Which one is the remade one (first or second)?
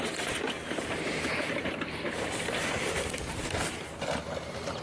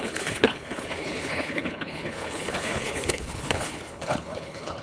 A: second